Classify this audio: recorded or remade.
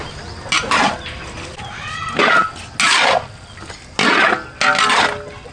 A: recorded